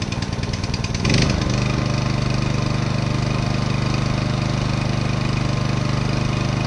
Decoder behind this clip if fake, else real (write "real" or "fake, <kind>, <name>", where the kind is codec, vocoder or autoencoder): real